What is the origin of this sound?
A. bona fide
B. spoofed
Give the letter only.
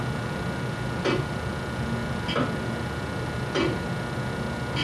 A